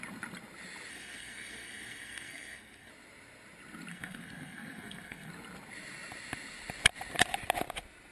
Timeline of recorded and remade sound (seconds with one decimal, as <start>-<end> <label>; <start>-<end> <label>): 0.0-0.9 recorded; 0.9-2.9 remade; 2.9-3.9 recorded; 3.9-5.3 remade; 5.3-8.1 recorded